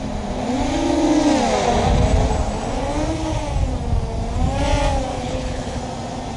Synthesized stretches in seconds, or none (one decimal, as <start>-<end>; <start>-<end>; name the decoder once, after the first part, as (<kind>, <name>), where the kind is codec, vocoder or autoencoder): 5.1-5.8 (codec, HILCodec)